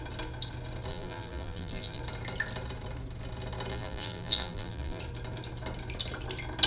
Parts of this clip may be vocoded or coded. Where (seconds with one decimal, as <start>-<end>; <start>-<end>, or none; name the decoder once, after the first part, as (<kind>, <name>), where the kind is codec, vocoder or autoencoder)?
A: 0.9-2.0 (vocoder, BigVGAN v2); 3.7-5.0